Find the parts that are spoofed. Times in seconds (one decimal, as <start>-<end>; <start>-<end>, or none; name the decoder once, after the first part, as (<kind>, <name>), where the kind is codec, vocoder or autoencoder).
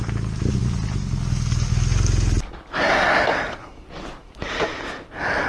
none